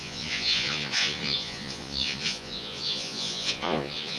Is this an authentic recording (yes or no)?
no